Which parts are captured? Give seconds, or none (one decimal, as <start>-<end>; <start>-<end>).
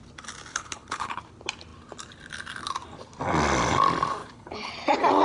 0.0-0.5; 1.2-4.2; 4.7-5.2